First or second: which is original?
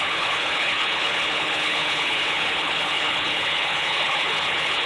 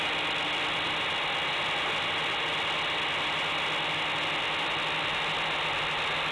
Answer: second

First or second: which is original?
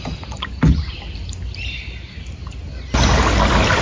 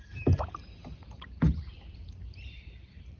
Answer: first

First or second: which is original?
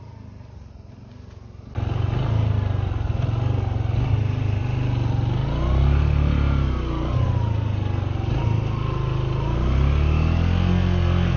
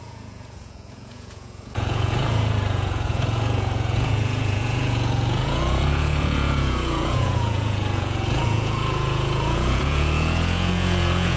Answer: first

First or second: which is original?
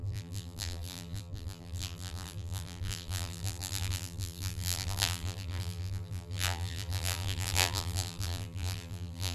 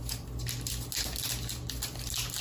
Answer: second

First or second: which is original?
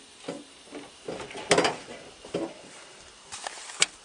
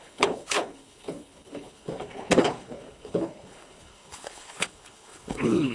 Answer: first